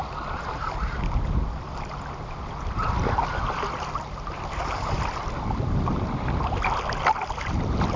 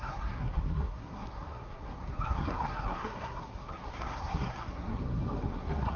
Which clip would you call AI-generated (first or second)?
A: second